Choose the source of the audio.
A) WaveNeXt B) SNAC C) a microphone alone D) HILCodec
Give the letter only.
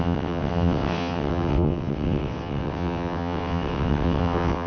A